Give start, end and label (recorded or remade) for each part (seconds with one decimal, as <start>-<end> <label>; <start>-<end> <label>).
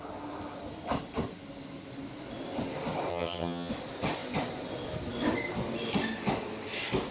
0.0-3.1 recorded; 3.1-3.7 remade; 3.7-7.1 recorded